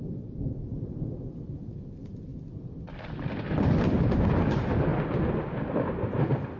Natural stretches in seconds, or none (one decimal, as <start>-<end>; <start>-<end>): 0.7-1.6; 4.9-5.4